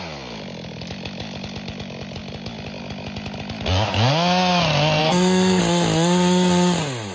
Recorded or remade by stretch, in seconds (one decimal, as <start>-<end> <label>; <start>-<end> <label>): 0.0-5.0 recorded; 5.0-5.6 remade; 5.6-7.1 recorded